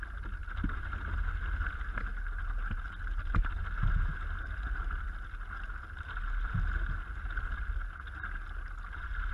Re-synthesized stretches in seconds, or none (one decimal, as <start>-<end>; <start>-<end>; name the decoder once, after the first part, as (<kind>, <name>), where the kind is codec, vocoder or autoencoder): none